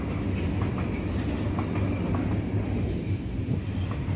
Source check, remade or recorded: recorded